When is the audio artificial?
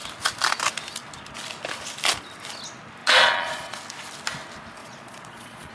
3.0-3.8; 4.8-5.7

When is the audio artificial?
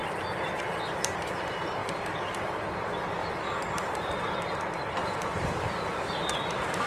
0.6-1.8; 2.4-6.9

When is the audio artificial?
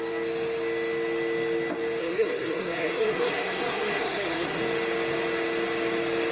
2.0-4.6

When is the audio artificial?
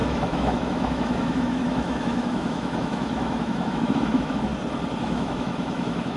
0.0-4.5; 5.0-6.2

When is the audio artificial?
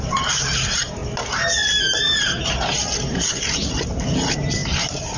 0.0-1.0; 1.8-5.2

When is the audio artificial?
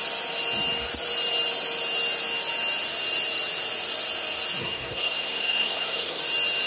4.6-6.2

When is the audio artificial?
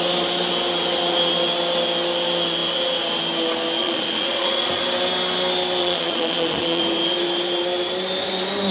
3.8-4.8; 5.8-6.8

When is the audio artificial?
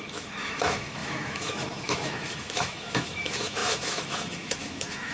0.0-5.1